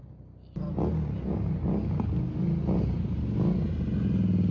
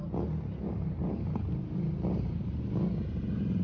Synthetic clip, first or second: second